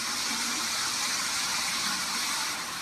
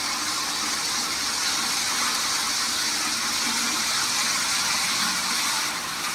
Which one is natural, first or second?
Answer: second